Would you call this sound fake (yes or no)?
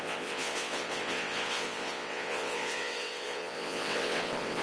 yes